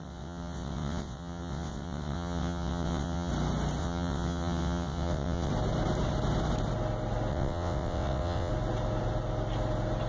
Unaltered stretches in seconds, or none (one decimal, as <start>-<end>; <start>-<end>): 3.3-3.8; 5.5-7.3; 8.5-10.1